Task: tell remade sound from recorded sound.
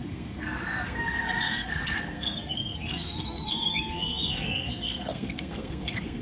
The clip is remade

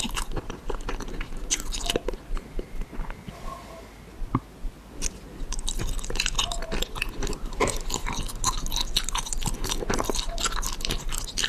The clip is recorded